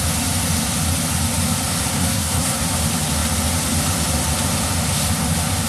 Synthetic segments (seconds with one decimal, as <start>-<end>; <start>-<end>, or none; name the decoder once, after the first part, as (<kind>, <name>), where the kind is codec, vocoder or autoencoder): 1.9-2.6 (codec, SNAC)